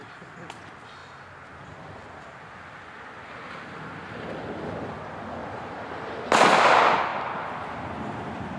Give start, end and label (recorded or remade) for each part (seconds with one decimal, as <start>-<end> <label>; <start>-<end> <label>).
0.0-5.4 recorded; 5.4-5.9 remade; 5.9-8.6 recorded